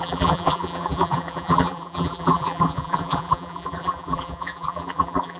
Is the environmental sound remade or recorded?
remade